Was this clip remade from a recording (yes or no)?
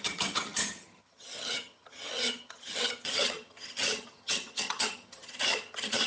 yes